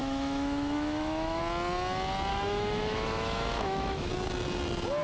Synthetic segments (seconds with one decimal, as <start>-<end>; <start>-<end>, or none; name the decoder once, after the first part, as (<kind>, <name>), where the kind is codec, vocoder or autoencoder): 0.0-1.4 (autoencoder, DAC-VAE); 2.3-4.1